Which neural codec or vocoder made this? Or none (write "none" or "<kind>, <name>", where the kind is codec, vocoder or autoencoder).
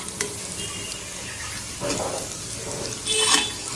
none